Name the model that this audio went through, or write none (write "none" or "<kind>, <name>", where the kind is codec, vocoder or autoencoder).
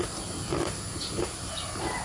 none